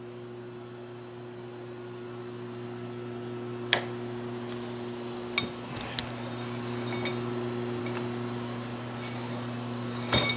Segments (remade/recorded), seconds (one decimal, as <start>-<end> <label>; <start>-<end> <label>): 0.0-10.4 recorded